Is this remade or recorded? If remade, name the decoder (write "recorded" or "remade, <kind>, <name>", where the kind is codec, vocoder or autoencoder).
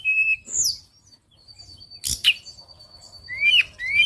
recorded